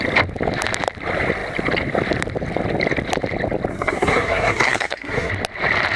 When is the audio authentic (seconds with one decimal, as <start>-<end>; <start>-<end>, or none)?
0.0-3.7; 5.3-6.0

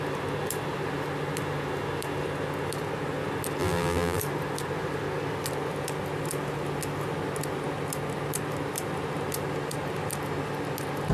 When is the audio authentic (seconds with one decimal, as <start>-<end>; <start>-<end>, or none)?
0.0-3.6; 4.2-11.1

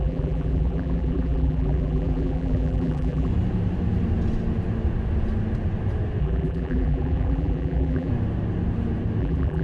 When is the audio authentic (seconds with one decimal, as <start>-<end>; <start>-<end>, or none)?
3.3-6.2; 8.1-9.2

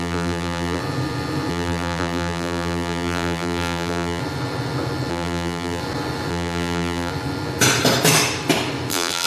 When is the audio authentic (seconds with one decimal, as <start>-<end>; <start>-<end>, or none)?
0.8-1.5; 4.2-5.1; 5.8-6.3; 7.1-8.9

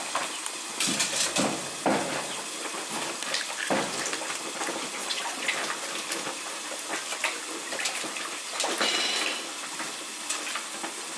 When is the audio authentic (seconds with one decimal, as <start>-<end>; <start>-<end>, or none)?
0.0-5.0; 5.5-11.2

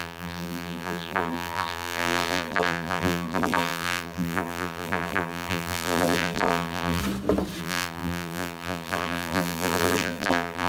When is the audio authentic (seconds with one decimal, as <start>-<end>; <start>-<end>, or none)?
7.0-7.6